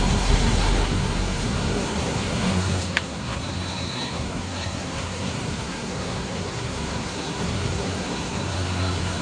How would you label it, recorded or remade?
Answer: remade